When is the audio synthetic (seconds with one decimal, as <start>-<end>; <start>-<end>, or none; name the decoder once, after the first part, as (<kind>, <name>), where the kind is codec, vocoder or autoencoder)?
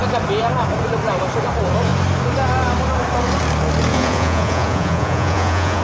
3.9-5.8 (vocoder, Vocos)